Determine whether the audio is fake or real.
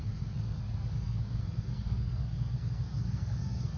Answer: fake